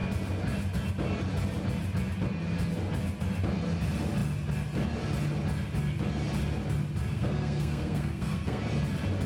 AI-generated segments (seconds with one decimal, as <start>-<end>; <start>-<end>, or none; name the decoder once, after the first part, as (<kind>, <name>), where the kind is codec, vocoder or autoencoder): 7.1-8.6 (codec, SNAC)